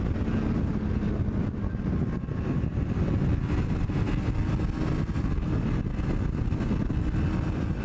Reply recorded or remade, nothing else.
recorded